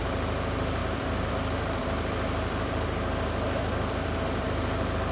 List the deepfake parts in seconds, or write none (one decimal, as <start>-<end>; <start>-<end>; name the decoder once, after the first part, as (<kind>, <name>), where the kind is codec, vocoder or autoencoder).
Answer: 0.8-1.3 (vocoder, BigVGAN v2); 1.8-5.1